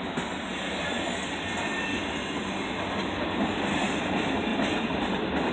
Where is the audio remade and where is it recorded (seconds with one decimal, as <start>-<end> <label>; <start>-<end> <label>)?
0.0-5.5 recorded